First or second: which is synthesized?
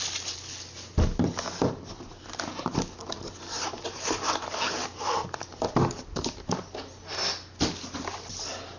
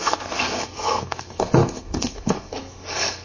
second